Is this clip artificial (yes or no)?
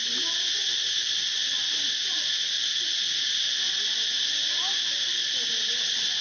no